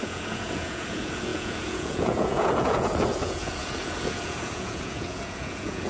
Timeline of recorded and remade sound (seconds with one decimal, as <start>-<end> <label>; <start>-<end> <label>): 0.0-5.9 remade